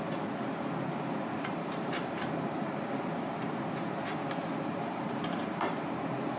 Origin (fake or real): fake